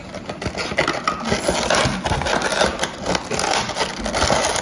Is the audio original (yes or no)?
yes